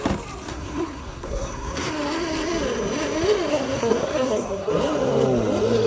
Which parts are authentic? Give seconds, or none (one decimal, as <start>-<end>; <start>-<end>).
0.0-0.5; 1.9-3.5; 4.7-5.9